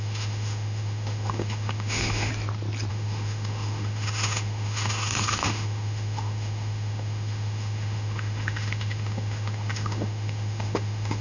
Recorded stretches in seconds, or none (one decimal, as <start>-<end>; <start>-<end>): 2.3-2.9